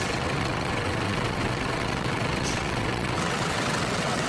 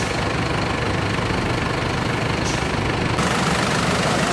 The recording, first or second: second